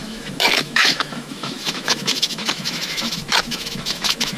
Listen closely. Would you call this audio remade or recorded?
remade